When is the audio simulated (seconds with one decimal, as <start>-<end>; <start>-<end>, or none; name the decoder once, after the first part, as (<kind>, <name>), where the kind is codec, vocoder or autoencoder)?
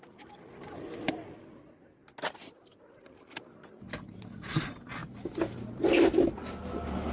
none